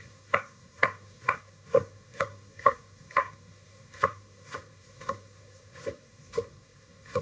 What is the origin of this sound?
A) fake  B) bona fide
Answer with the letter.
A